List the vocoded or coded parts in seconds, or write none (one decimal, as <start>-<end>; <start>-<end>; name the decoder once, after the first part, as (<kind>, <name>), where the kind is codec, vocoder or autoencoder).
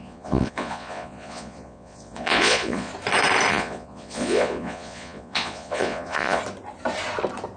0.0-2.9 (vocoder, Vocos); 3.5-6.4